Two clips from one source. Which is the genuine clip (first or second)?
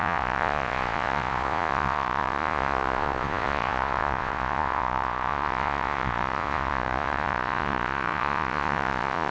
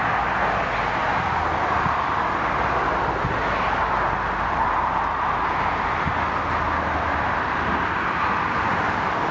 second